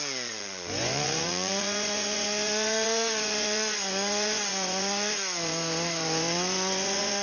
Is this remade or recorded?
remade